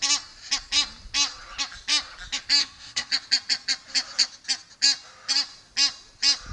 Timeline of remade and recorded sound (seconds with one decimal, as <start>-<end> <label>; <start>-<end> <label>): 0.0-2.6 recorded; 2.6-3.1 remade; 3.1-6.5 recorded